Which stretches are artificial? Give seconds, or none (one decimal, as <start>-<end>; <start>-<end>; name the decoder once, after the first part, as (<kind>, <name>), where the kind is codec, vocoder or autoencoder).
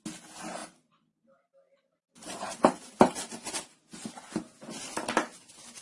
0.6-4.1 (vocoder, BigVGAN v2)